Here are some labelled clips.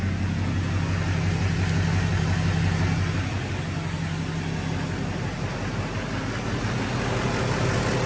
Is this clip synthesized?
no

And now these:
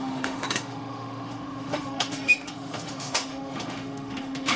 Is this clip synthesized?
yes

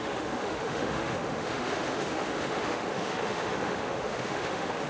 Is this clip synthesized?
yes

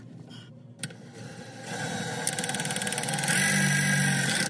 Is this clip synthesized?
no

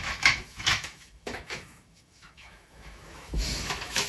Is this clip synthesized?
yes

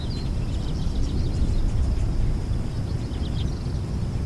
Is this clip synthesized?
no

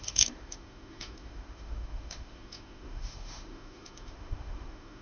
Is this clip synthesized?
yes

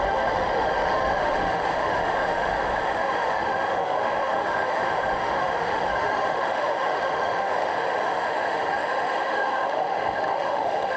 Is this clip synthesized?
yes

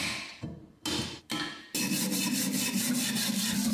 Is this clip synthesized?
no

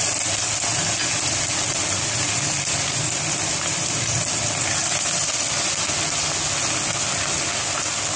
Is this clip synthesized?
no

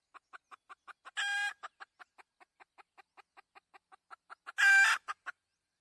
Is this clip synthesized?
no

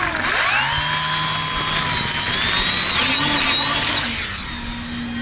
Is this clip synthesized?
no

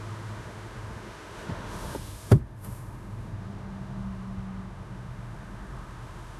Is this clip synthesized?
yes